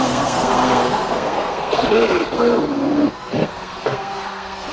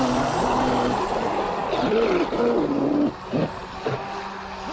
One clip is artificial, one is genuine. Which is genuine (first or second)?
second